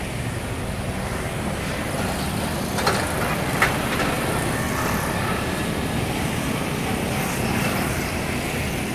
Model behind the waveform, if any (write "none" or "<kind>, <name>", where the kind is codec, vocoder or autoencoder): vocoder, BigVGAN v2